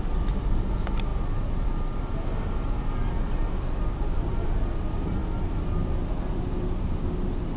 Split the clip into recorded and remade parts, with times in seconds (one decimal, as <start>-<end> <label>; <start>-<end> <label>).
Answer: 0.0-7.6 recorded